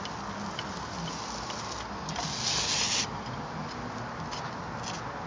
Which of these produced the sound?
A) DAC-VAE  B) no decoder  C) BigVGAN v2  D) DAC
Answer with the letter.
B